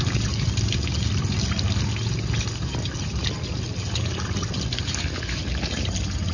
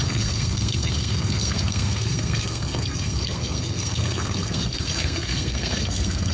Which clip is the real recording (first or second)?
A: first